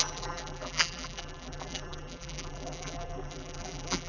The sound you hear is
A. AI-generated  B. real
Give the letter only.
A